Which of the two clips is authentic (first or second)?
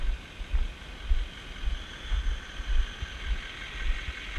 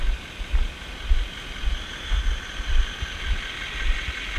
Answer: first